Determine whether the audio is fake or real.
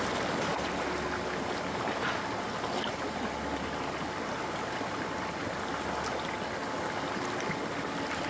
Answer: real